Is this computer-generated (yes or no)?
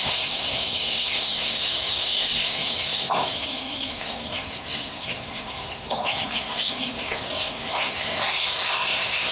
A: yes